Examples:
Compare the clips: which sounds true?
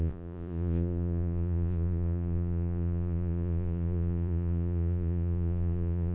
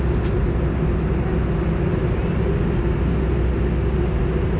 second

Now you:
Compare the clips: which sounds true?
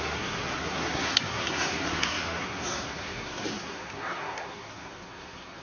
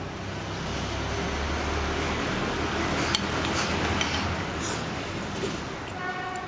second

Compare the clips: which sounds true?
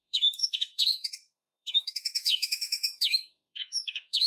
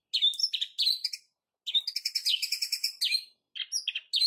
second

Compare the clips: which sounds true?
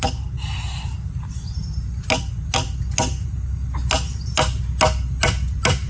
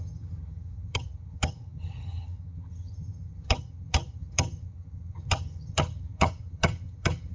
first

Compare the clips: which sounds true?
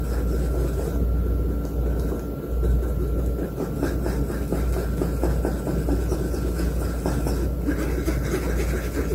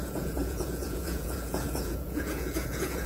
first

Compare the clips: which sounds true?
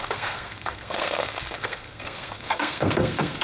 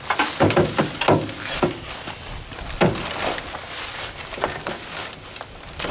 second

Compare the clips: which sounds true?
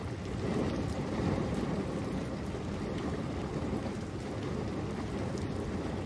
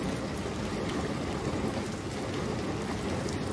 second